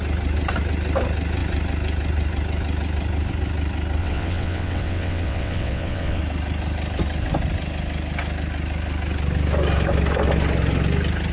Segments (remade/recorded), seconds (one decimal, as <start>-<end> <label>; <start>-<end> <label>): 0.0-4.0 recorded; 4.0-6.2 remade; 6.2-11.3 recorded